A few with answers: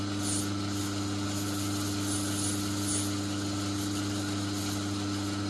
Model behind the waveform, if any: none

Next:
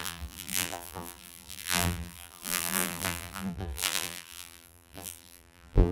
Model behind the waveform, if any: vocoder, BigVGAN v2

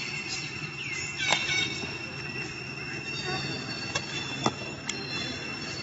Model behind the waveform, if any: none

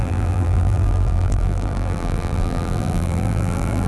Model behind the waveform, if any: vocoder, BigVGAN v2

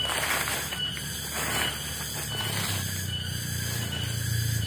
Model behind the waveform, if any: none